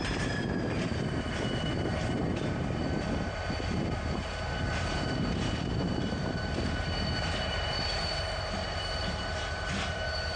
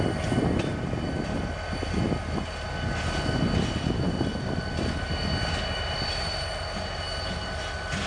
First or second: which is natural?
second